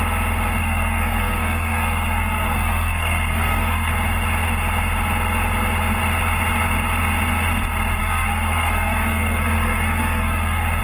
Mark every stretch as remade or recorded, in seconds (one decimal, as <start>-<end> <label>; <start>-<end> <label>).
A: 0.0-0.6 recorded; 0.6-3.9 remade; 3.9-8.0 recorded; 8.0-10.8 remade